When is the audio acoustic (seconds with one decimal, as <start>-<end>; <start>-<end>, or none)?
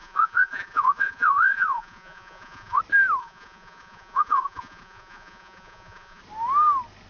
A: 2.8-3.2; 6.2-7.1